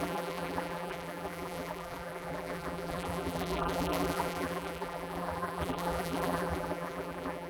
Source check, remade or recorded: remade